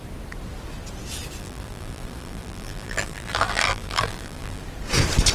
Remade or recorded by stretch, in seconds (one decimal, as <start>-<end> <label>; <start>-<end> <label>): 0.0-1.4 recorded; 1.4-4.6 remade; 4.6-5.3 recorded